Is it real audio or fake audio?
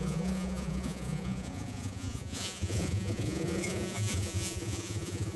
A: fake